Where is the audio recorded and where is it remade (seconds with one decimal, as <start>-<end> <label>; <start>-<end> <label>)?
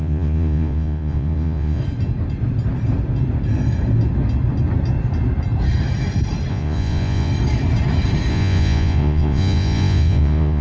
0.0-1.8 remade; 1.8-6.5 recorded; 6.5-7.3 remade; 7.3-8.3 recorded; 8.3-10.6 remade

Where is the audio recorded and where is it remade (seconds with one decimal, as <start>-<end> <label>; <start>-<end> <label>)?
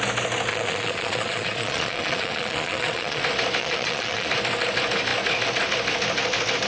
0.0-0.5 recorded; 0.5-3.2 remade; 3.2-3.6 recorded; 3.6-4.3 remade; 4.3-6.7 recorded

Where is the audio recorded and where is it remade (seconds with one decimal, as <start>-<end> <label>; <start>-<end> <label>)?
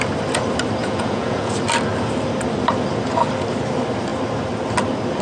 0.0-0.8 recorded; 0.8-1.5 remade; 1.5-5.2 recorded